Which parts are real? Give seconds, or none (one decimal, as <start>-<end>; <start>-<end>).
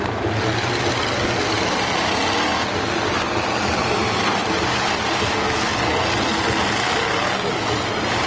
0.0-8.3